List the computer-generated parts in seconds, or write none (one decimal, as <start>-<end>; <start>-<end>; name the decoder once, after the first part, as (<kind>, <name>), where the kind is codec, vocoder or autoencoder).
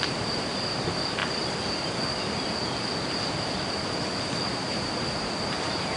0.0-1.2 (vocoder, BigVGAN v2); 4.8-6.0